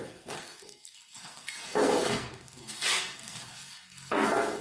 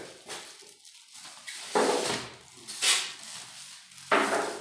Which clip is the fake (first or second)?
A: first